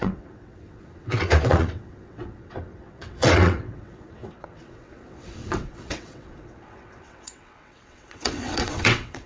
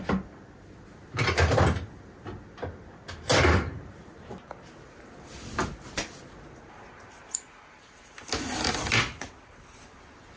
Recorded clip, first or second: second